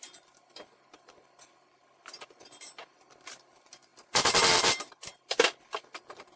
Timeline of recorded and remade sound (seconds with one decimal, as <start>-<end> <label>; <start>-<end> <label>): 0.0-6.4 remade